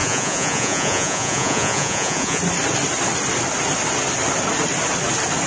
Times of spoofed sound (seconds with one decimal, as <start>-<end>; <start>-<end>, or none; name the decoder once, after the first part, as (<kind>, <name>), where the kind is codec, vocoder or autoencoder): 0.0-2.4 (vocoder, Vocos)